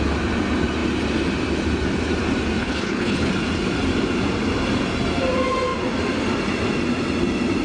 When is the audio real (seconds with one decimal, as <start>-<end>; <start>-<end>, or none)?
0.0-2.6; 3.3-7.6